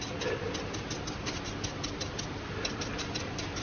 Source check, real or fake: real